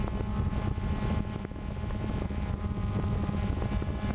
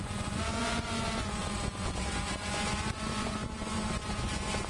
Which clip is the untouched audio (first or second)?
first